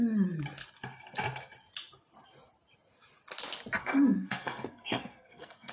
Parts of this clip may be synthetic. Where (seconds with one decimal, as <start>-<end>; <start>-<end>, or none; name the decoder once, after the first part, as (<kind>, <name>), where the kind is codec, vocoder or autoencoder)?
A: 3.8-5.7 (codec, SNAC)